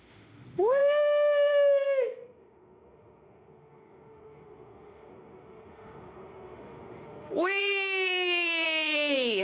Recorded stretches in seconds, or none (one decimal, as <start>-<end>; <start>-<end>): none